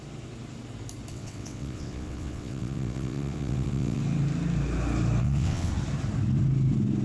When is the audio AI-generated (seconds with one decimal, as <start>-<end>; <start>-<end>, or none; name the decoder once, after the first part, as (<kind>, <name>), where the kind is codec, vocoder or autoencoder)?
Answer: 1.1-4.0 (vocoder, WaveNeXt); 5.2-5.7